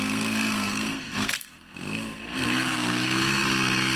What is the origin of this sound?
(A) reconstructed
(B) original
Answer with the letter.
A